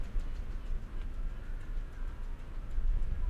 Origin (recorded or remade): recorded